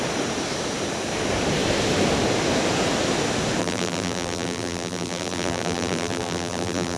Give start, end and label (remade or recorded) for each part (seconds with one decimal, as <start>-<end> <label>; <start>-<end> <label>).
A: 0.0-3.6 recorded; 3.6-7.0 remade